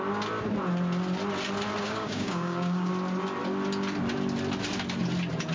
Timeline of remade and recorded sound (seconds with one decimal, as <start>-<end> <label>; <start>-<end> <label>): 0.0-1.8 recorded; 1.8-2.9 remade; 2.9-5.5 recorded